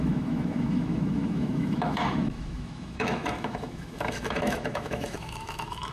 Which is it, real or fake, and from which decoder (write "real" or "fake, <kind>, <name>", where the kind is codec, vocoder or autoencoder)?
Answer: fake, autoencoder, DAC-VAE